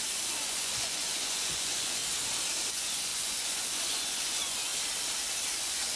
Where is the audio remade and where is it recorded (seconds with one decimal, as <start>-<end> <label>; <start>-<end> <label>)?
0.0-2.0 remade; 2.0-2.7 recorded; 2.7-4.7 remade; 4.7-5.6 recorded; 5.6-6.0 remade